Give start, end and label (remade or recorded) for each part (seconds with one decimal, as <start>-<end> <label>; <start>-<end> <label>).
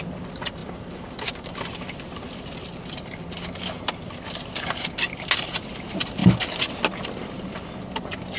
0.0-8.4 recorded